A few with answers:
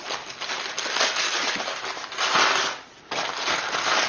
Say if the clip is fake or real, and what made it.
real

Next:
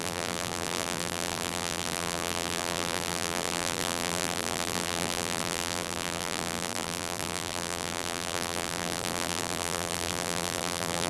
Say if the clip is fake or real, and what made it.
fake, vocoder, BigVGAN v2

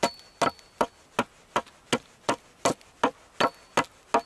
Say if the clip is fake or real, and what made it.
real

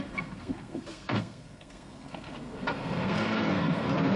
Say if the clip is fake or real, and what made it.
fake, codec, SNAC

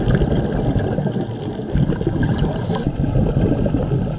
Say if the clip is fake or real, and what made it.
real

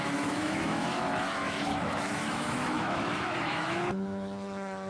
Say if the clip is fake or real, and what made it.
fake, autoencoder, DAC-VAE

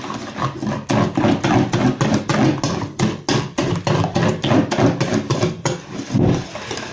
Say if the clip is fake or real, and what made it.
real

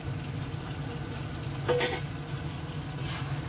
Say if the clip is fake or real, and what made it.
real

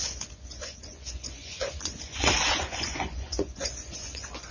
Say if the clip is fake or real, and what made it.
fake, vocoder, Vocos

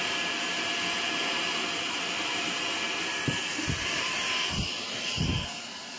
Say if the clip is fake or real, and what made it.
real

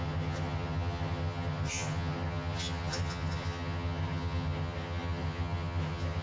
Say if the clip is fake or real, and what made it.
fake, vocoder, HiFi-GAN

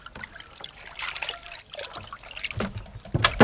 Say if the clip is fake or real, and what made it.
real